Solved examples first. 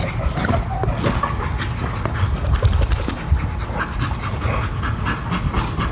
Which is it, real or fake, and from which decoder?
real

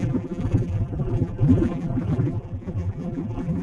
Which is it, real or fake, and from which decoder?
fake, vocoder, BigVGAN v2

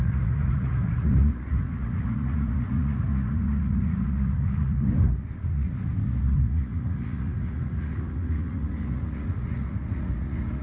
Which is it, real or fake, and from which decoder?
fake, vocoder, Vocos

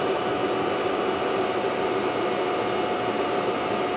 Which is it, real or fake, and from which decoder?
real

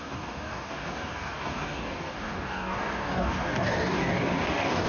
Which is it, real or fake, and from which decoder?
fake, codec, DAC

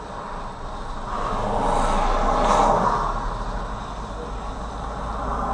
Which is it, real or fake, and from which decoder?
real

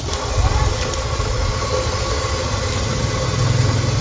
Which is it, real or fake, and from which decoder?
real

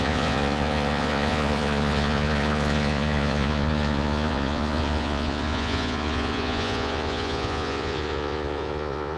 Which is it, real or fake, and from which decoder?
fake, vocoder, Vocos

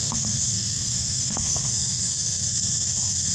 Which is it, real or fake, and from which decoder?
fake, codec, SNAC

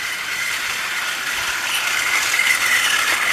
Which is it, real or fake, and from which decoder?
fake, vocoder, BigVGAN v2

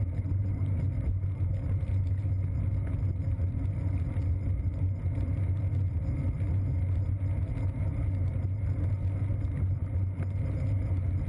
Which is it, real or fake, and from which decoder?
real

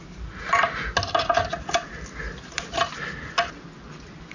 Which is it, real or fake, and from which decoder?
real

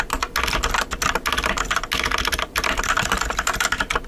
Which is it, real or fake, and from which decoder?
real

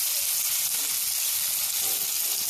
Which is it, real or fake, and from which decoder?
real